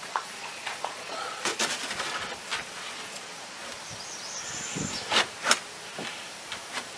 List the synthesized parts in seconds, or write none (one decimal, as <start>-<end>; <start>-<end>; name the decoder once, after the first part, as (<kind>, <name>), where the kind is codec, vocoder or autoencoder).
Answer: 0.0-1.5 (vocoder, Vocos); 2.9-3.7